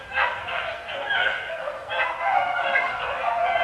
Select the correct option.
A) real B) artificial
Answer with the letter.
B